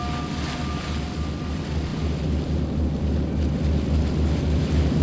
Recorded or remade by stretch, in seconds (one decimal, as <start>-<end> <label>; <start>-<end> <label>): 0.0-5.0 recorded